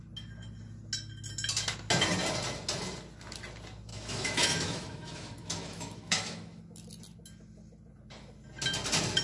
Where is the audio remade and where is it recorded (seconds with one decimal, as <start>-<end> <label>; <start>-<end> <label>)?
0.0-3.9 recorded; 3.9-6.6 remade; 6.6-9.2 recorded